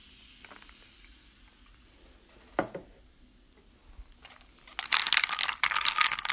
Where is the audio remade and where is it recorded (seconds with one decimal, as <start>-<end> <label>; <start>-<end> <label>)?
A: 0.0-6.3 recorded